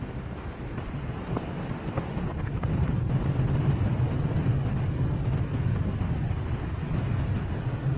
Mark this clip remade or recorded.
recorded